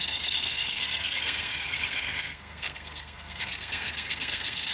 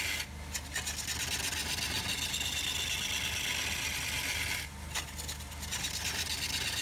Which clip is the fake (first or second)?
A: first